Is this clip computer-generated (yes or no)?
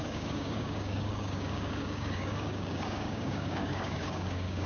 yes